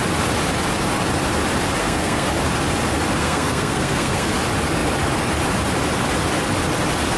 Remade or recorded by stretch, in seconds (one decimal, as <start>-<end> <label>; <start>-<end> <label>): 0.0-1.8 recorded; 1.8-2.3 remade; 2.3-3.2 recorded; 3.2-4.3 remade; 4.3-7.2 recorded